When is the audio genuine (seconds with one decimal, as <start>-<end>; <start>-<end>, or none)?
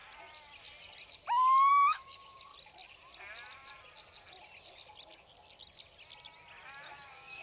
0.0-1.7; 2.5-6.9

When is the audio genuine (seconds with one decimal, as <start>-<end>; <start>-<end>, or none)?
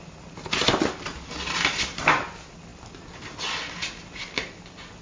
0.0-5.0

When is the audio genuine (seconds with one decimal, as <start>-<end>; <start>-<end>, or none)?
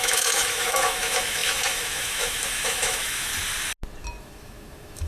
3.3-4.2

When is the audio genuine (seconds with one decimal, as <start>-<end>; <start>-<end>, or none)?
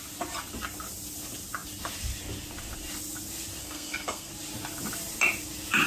0.0-3.6; 4.3-5.9